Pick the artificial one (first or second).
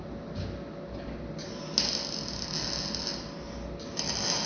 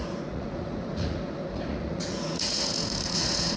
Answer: second